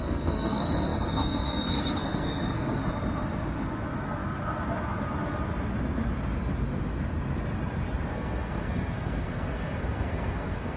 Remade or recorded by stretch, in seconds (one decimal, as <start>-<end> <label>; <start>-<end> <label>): 0.0-2.8 remade; 2.8-8.1 recorded; 8.1-10.8 remade